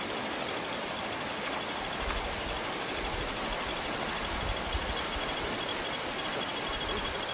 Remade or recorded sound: recorded